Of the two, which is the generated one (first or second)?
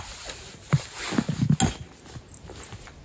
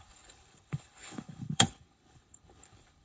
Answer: second